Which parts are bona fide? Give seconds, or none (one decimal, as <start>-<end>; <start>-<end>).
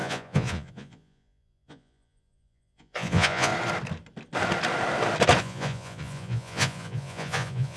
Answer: 3.5-5.4